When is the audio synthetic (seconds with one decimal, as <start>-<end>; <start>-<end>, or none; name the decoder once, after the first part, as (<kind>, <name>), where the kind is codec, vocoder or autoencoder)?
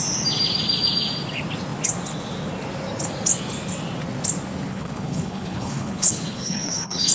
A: 4.7-7.1 (codec, HILCodec)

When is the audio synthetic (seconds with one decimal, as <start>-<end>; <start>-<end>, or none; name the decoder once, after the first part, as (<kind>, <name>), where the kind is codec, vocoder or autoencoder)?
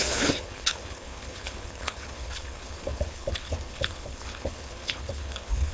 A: 0.0-5.7 (codec, HILCodec)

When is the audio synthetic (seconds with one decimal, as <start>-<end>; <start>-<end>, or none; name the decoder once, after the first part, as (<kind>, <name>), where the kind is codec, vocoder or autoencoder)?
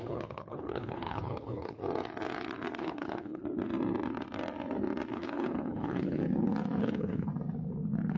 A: 0.0-1.8 (codec, HILCodec); 2.8-3.4; 5.1-6.2; 6.8-7.3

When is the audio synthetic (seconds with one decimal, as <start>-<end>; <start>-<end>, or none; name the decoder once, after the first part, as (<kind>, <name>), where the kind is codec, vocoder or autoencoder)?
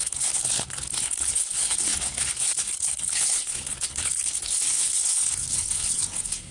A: 0.0-6.5 (codec, HILCodec)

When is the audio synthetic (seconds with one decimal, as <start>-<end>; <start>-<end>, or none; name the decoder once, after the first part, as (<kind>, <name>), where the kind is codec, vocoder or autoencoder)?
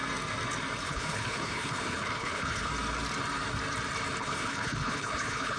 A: 0.8-2.7 (codec, HILCodec); 4.2-5.6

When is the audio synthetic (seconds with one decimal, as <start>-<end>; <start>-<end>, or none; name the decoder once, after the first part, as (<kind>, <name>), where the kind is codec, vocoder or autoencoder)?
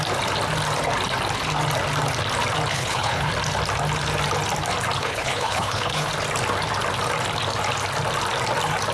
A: 2.7-3.3 (codec, HILCodec); 5.0-6.1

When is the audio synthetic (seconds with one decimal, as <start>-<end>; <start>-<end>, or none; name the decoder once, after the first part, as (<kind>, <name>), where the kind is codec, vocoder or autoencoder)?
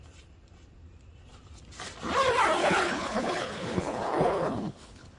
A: 2.6-5.2 (codec, HILCodec)